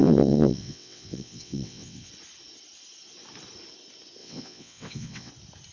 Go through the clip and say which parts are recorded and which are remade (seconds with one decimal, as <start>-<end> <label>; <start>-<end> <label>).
0.0-2.1 remade; 2.1-4.2 recorded; 4.2-5.3 remade; 5.3-5.7 recorded

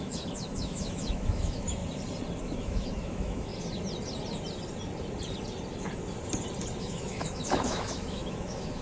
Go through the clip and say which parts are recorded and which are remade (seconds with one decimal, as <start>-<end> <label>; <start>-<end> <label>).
0.0-1.8 remade; 1.8-2.4 recorded; 2.4-3.5 remade; 3.5-6.8 recorded; 6.8-8.8 remade

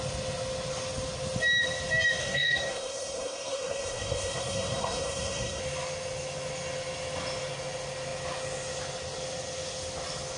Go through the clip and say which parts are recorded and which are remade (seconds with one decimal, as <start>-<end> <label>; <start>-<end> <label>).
0.0-2.2 recorded; 2.2-5.6 remade; 5.6-10.4 recorded

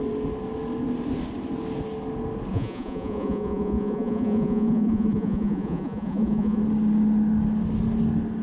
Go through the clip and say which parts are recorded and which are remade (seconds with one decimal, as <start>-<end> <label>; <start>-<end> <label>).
0.0-2.5 recorded; 2.5-6.6 remade; 6.6-8.4 recorded

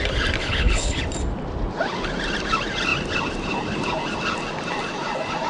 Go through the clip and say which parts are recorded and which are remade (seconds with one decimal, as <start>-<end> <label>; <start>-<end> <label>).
0.0-0.4 recorded; 0.4-1.0 remade; 1.0-5.5 recorded

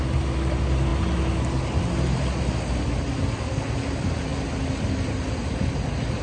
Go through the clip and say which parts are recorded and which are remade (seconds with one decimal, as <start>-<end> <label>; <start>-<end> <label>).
0.0-6.2 recorded